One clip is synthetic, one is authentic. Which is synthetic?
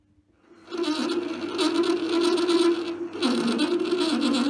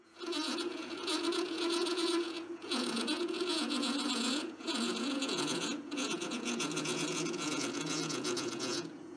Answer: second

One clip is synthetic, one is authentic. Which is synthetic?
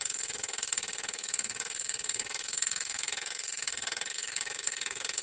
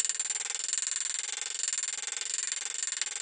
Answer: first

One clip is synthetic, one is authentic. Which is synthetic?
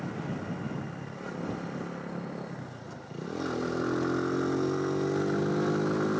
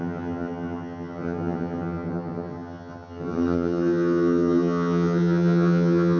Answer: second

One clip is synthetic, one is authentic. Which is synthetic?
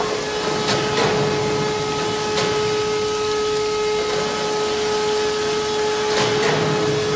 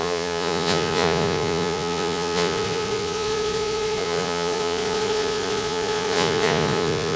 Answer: second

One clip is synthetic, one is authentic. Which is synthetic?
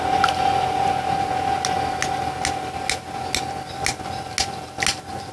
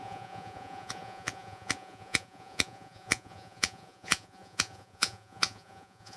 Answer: second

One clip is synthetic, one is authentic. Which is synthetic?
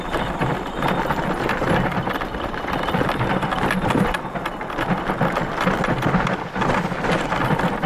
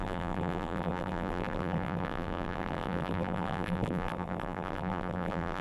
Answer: second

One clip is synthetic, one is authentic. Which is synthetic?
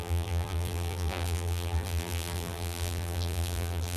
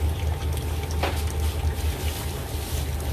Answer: first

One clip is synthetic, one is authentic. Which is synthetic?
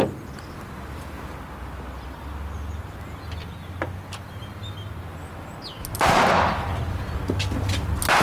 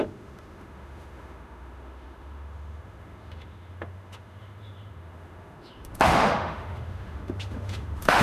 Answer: second